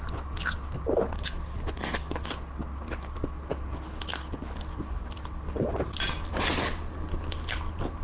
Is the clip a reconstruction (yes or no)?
no